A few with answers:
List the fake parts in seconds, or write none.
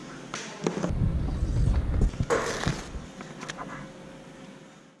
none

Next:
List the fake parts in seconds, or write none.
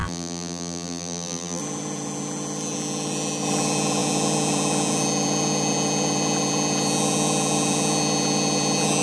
0.0-1.6 (vocoder, BigVGAN v2)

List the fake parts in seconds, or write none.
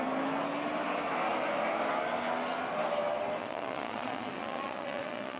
3.4-5.4 (vocoder, Vocos)